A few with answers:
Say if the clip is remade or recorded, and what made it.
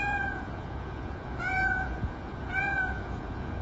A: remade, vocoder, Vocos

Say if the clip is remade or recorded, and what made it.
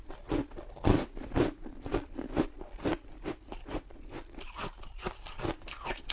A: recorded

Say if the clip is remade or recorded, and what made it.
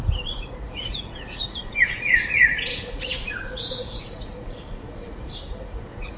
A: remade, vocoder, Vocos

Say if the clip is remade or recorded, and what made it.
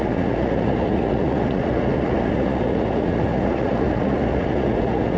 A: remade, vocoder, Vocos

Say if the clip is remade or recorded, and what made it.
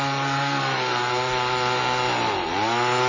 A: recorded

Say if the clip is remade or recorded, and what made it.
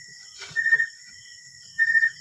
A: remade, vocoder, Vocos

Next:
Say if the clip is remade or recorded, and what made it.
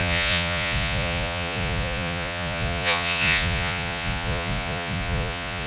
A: remade, vocoder, Vocos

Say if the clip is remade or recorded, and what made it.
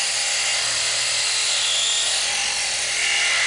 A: recorded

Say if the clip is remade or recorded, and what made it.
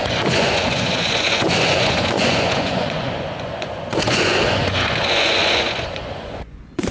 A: remade, vocoder, Vocos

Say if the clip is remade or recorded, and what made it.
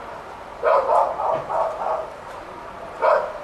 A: recorded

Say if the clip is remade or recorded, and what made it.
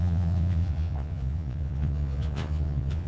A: remade, vocoder, Vocos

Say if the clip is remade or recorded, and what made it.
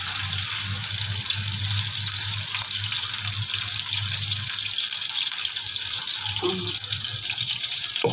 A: recorded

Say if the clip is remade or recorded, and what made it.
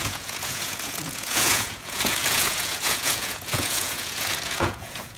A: remade, vocoder, Vocos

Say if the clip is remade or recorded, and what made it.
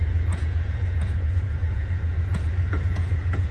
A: remade, vocoder, Vocos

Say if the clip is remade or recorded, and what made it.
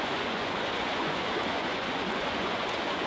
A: remade, vocoder, Vocos